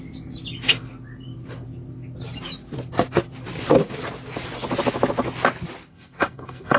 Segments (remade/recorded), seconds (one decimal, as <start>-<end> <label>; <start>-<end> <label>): 0.0-5.9 recorded; 5.9-6.8 remade